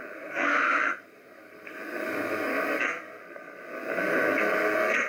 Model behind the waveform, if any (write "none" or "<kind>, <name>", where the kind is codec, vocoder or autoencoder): codec, SNAC